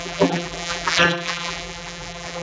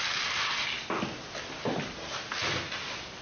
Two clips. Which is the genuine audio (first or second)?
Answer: second